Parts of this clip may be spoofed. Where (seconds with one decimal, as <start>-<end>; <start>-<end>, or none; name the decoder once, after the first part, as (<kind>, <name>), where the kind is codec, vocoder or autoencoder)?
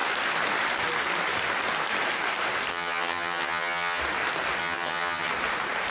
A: 2.7-4.0 (vocoder, HiFi-GAN); 4.6-5.3